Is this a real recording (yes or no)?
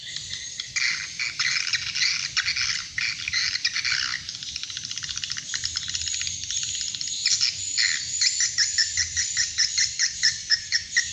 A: yes